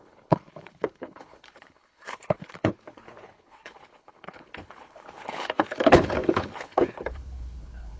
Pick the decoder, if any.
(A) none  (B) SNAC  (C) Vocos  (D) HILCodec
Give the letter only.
D